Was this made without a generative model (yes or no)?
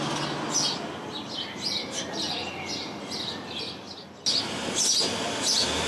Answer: yes